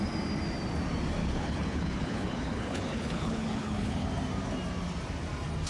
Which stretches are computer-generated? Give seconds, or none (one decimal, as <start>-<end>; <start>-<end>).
1.2-4.1